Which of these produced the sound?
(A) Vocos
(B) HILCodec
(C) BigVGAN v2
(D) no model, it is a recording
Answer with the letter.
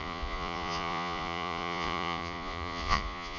A